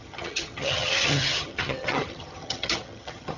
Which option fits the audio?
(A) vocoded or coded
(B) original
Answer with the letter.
A